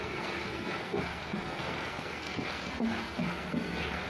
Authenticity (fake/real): fake